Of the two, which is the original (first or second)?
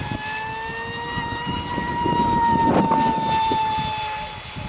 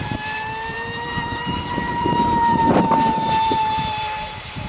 first